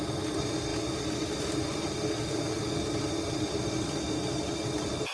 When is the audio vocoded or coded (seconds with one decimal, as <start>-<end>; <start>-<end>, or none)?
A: none